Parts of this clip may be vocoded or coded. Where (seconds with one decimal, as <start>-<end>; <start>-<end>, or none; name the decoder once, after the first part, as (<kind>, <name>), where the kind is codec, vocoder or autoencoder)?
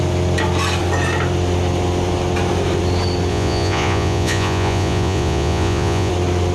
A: 3.3-6.1 (vocoder, Vocos)